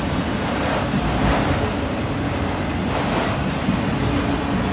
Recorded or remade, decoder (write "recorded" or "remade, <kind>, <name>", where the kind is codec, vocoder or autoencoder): recorded